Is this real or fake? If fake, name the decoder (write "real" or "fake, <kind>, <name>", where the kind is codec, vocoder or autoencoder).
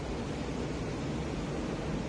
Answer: real